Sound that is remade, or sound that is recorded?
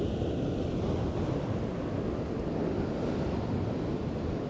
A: recorded